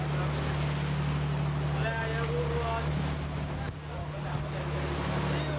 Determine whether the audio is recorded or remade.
recorded